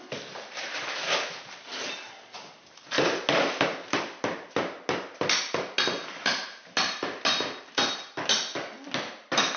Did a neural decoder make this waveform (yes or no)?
no